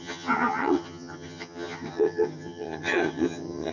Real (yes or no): no